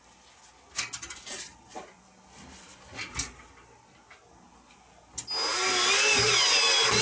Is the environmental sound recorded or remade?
recorded